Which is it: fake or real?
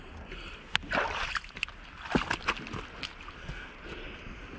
real